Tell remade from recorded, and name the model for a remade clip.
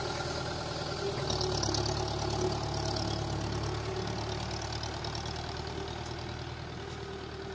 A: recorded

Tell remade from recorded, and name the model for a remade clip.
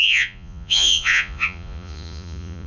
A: remade, vocoder, Vocos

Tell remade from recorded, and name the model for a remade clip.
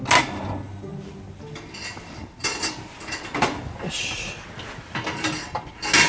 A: recorded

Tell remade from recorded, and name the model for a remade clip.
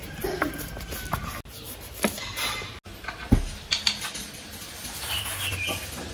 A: recorded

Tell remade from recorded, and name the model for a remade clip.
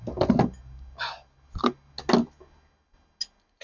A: recorded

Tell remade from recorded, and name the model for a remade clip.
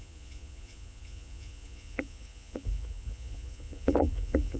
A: remade, vocoder, Vocos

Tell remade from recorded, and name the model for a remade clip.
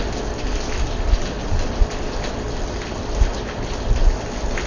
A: recorded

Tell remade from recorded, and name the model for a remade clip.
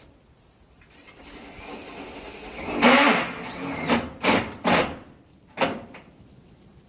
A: recorded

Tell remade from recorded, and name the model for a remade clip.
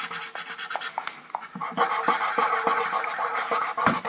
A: recorded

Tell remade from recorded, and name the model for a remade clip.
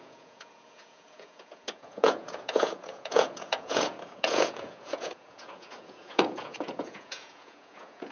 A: remade, vocoder, Vocos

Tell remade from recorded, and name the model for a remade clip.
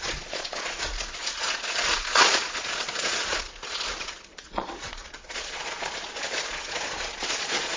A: remade, vocoder, Vocos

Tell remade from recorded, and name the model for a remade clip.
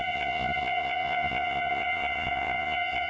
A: remade, vocoder, Vocos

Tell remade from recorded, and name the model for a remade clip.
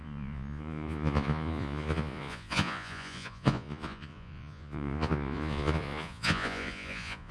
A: remade, vocoder, Vocos